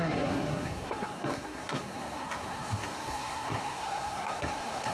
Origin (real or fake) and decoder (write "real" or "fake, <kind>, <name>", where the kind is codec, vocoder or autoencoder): fake, codec, SNAC